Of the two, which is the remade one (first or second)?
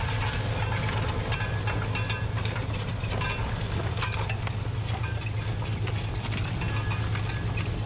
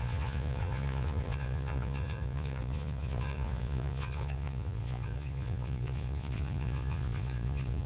second